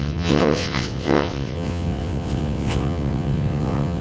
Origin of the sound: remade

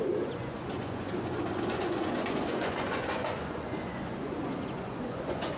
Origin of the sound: remade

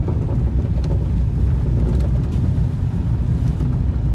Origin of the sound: recorded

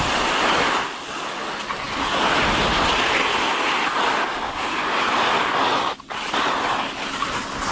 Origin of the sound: recorded